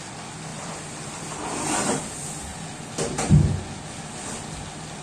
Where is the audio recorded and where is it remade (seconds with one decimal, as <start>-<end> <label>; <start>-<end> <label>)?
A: 0.0-0.5 recorded; 0.5-2.0 remade; 2.0-2.5 recorded; 2.5-3.6 remade; 3.6-5.0 recorded